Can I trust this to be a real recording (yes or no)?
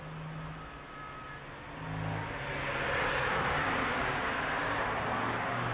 yes